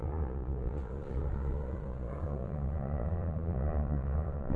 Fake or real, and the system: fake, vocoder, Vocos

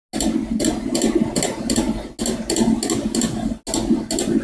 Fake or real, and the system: real